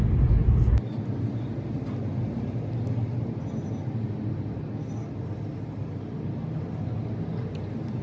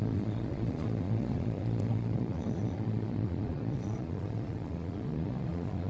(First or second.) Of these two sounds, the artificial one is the second